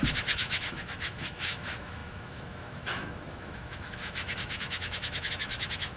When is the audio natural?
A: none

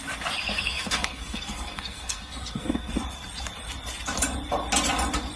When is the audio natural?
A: 0.0-0.5; 2.9-5.4

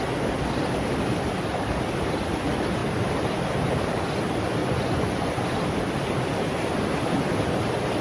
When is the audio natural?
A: 0.0-4.6; 5.3-8.0